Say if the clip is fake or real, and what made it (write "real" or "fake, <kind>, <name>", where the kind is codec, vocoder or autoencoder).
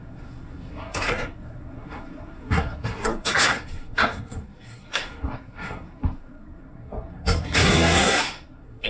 fake, codec, SNAC